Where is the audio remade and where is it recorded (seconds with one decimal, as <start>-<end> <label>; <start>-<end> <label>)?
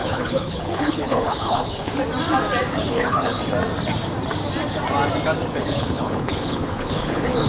0.0-1.9 remade; 1.9-2.7 recorded; 2.7-3.4 remade; 3.4-5.5 recorded; 5.5-7.5 remade